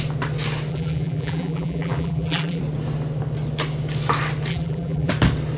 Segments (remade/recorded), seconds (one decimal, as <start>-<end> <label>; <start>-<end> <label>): 0.0-0.7 recorded; 0.7-2.6 remade; 2.6-4.5 recorded; 4.5-5.1 remade; 5.1-5.6 recorded